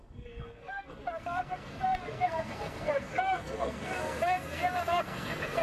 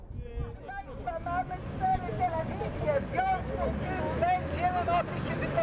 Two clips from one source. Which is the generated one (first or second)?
first